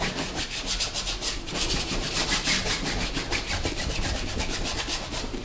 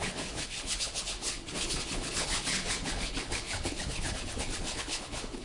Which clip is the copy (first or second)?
second